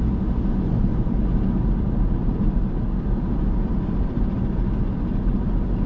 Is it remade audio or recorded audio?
recorded